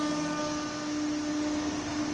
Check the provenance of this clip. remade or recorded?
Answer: recorded